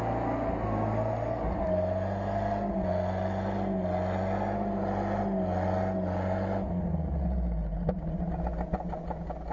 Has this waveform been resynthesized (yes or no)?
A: no